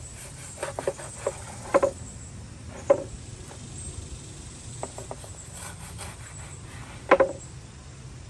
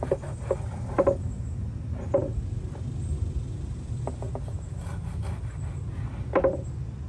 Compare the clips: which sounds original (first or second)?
second